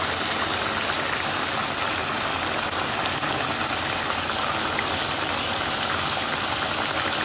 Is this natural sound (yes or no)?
yes